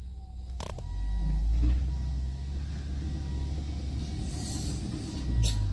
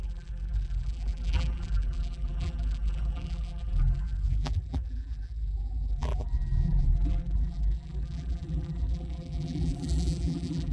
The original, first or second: first